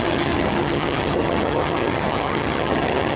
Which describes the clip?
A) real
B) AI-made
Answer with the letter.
B